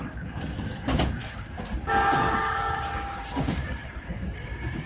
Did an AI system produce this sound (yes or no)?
yes